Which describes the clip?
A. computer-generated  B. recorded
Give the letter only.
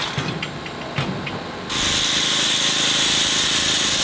B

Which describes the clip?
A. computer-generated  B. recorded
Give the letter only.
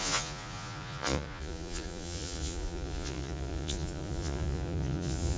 A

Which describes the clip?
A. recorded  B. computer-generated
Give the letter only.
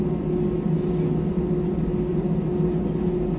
A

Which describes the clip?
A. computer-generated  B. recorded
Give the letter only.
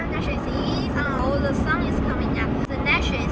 B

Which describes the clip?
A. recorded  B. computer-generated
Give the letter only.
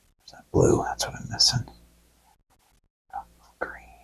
A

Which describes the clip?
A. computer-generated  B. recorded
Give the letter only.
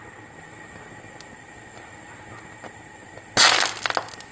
B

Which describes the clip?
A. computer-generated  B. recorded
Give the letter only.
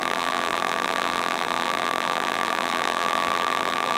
A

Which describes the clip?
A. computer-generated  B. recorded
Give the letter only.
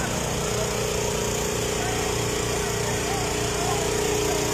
B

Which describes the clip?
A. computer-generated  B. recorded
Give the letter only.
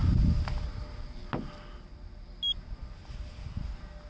B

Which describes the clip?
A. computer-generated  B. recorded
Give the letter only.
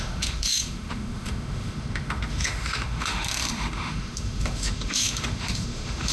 A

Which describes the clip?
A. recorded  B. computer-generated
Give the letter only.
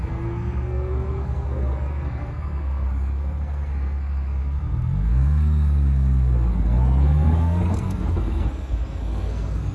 B